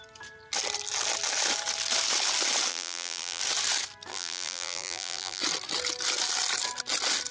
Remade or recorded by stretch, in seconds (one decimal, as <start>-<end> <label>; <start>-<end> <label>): 0.0-2.7 recorded; 2.7-3.4 remade; 3.4-4.1 recorded; 4.1-5.4 remade; 5.4-7.3 recorded